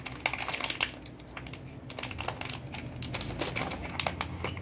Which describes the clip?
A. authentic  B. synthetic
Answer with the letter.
A